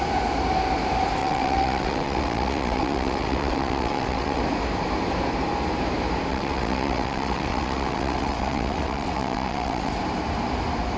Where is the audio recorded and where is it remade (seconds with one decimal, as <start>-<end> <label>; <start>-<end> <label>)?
0.0-1.2 recorded; 1.2-4.4 remade; 4.4-6.3 recorded; 6.3-9.9 remade; 9.9-11.0 recorded